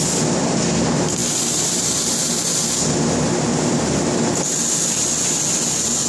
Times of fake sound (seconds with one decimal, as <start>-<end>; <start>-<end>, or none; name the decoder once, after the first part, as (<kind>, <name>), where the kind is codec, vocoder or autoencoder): none